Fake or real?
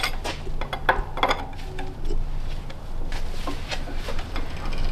real